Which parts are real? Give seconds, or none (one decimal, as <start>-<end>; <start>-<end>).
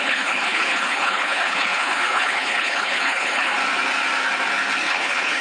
3.5-4.9